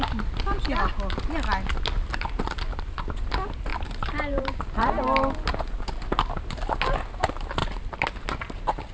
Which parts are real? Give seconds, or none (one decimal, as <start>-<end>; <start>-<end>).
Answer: 0.0-3.7; 5.8-7.6; 8.1-8.9